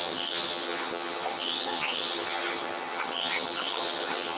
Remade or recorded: remade